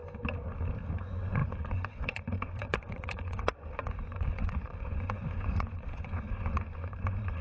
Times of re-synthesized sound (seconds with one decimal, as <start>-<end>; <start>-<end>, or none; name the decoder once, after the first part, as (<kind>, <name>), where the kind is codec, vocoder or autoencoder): 0.9-7.4 (vocoder, Vocos)